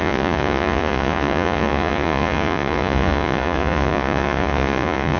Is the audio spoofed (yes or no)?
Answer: yes